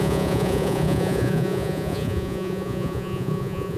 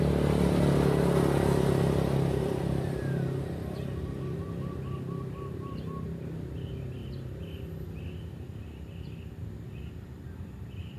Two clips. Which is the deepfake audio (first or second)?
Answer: first